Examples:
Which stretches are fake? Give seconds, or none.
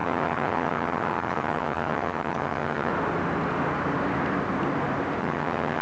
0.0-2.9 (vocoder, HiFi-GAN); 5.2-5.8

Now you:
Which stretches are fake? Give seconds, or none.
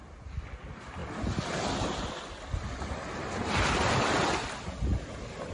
1.0-2.2 (vocoder, BigVGAN v2); 3.4-4.3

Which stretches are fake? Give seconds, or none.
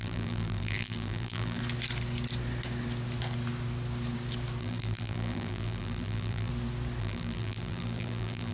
0.0-1.6 (vocoder, BigVGAN v2); 4.6-6.5; 7.0-8.5